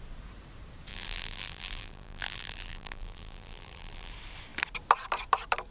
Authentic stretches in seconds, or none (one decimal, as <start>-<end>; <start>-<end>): 0.0-0.9; 4.1-5.7